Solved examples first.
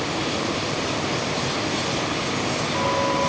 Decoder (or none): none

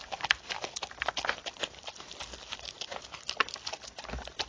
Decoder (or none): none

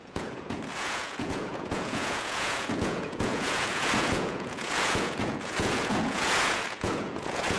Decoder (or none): vocoder, Vocos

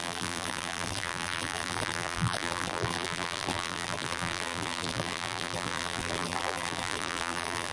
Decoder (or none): vocoder, BigVGAN v2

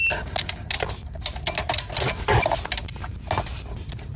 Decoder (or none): none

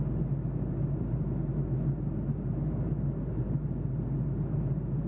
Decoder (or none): none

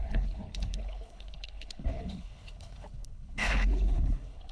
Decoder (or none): codec, HILCodec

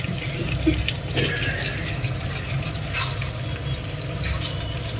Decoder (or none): none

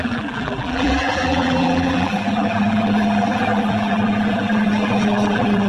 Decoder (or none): vocoder, BigVGAN v2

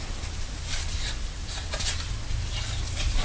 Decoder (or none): none